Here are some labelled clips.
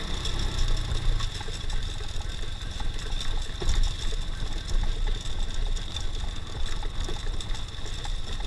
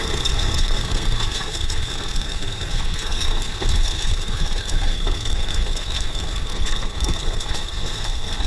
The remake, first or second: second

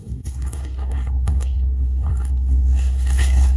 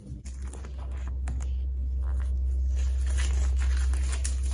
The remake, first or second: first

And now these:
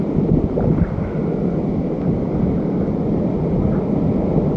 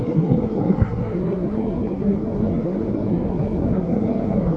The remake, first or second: second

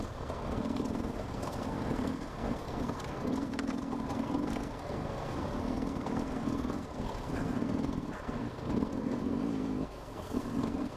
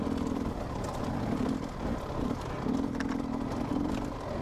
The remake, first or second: first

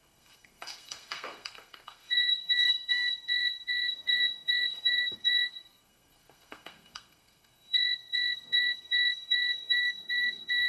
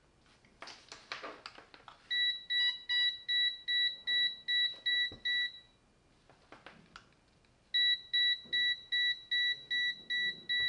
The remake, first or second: first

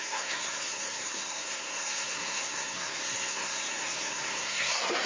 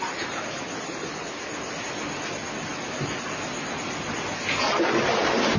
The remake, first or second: first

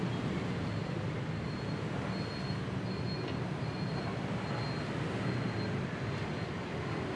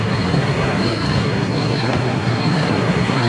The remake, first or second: second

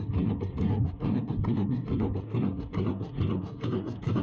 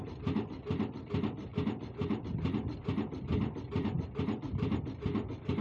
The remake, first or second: first